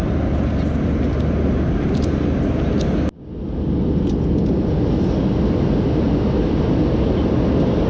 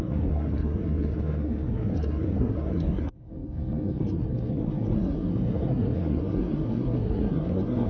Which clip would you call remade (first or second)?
second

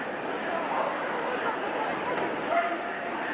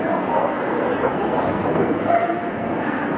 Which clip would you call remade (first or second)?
second